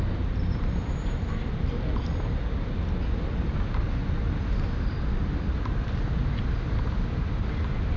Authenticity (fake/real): real